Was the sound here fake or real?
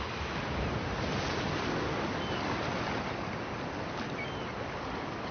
real